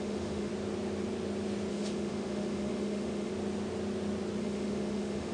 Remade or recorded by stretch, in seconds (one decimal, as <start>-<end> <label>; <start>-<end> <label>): 0.0-0.5 remade; 0.5-1.7 recorded; 1.7-3.3 remade; 3.3-4.4 recorded; 4.4-5.3 remade

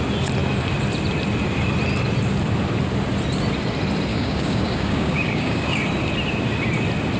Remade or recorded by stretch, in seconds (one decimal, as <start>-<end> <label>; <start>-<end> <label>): 0.0-4.1 recorded; 4.1-5.8 remade; 5.8-7.2 recorded

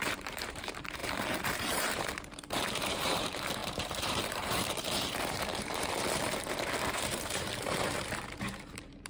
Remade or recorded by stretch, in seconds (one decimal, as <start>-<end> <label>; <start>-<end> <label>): 0.0-9.1 remade

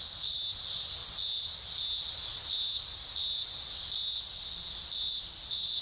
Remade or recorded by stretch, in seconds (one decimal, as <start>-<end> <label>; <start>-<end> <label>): 0.0-5.8 recorded